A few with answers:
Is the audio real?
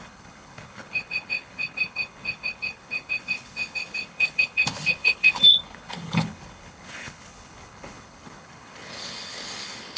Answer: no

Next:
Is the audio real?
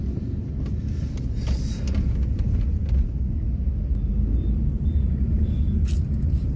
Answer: yes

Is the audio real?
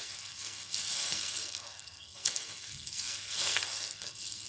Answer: no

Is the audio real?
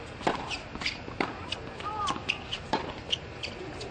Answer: yes